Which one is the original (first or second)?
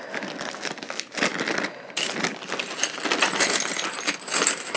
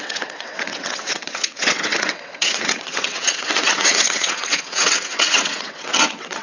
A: first